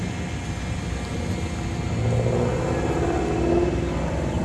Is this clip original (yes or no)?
yes